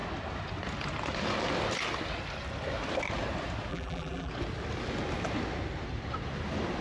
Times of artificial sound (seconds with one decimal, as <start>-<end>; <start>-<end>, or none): 3.7-4.3